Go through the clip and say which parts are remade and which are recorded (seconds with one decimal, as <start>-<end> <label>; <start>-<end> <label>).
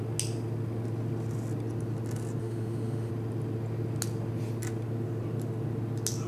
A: 0.0-2.4 recorded; 2.4-3.1 remade; 3.1-6.3 recorded